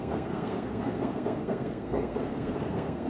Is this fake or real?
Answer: fake